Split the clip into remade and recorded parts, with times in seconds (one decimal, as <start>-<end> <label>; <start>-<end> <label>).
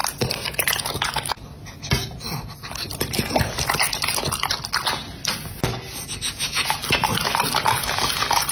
0.0-8.5 recorded